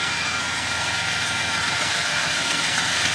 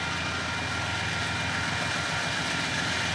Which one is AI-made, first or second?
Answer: first